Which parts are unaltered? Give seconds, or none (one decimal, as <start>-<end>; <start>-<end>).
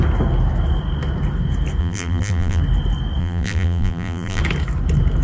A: 0.0-1.8; 2.6-3.2; 4.4-5.2